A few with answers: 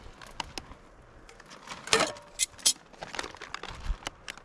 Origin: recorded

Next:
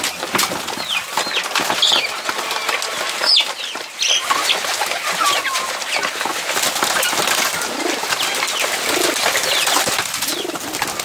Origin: recorded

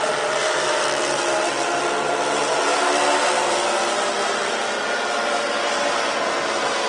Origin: recorded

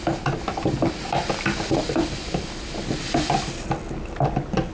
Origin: recorded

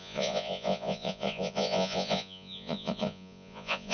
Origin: remade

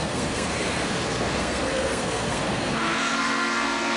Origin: remade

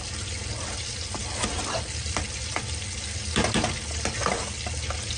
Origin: recorded